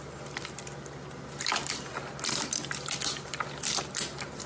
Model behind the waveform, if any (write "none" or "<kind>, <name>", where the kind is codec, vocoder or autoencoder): none